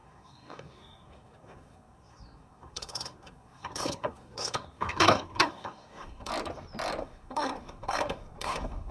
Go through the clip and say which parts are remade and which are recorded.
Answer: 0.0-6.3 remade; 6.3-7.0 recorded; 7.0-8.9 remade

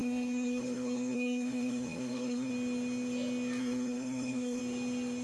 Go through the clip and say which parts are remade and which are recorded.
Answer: 0.0-2.5 remade; 2.5-3.6 recorded; 3.6-4.6 remade; 4.6-5.2 recorded